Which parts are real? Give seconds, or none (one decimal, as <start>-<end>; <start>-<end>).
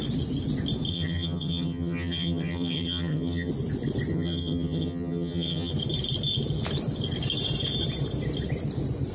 0.0-0.9; 3.5-4.1; 5.7-9.1